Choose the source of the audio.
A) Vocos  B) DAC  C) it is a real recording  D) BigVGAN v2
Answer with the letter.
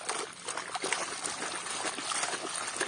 C